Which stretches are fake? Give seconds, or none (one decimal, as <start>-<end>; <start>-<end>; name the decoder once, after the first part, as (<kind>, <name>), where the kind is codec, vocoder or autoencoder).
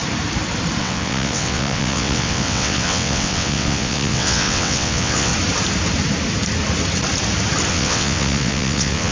0.8-5.3 (vocoder, WaveNeXt); 7.7-9.1